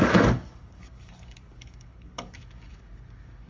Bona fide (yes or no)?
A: no